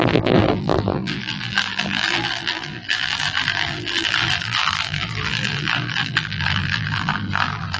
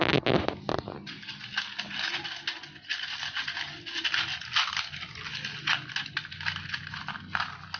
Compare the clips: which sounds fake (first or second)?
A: first